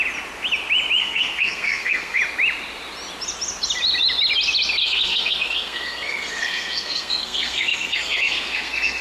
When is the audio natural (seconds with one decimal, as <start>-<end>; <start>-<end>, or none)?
0.0-1.0; 2.2-4.8